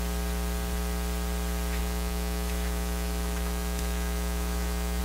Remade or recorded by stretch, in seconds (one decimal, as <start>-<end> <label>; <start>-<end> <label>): 0.0-1.8 recorded; 1.8-5.0 remade